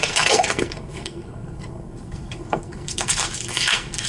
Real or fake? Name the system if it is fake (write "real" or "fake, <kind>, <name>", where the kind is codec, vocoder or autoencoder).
fake, codec, SNAC